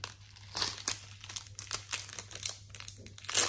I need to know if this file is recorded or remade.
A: recorded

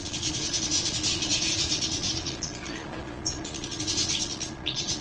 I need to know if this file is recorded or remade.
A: remade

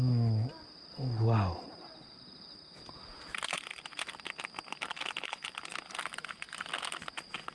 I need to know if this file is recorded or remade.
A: recorded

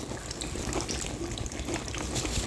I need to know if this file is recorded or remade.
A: recorded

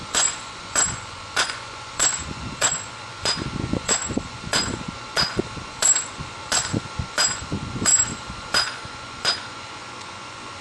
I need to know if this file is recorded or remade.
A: remade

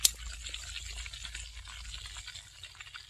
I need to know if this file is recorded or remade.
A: recorded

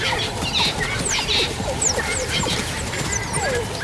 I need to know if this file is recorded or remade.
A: recorded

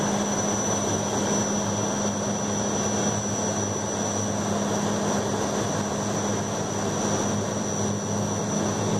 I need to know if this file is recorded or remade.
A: recorded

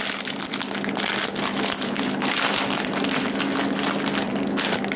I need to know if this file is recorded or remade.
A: recorded